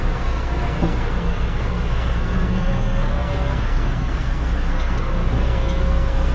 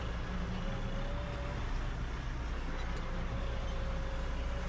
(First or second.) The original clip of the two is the second